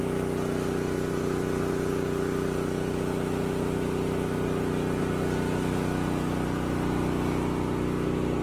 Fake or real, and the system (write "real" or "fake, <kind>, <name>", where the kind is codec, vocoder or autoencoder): real